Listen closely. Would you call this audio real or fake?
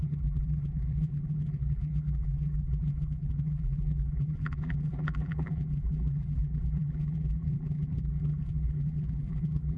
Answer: fake